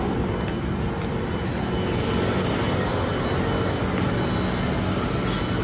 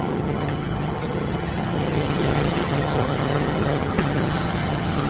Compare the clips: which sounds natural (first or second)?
first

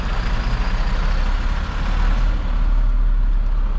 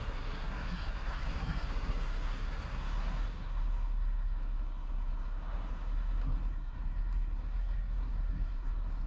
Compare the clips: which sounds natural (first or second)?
first